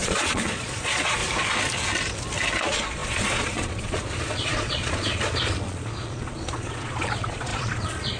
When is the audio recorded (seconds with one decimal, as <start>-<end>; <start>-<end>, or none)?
1.2-2.6